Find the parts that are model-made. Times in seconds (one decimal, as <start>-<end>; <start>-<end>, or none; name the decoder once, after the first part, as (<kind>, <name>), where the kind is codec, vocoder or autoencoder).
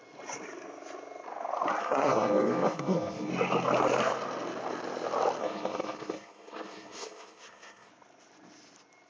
1.8-3.3 (codec, SNAC); 5.4-7.9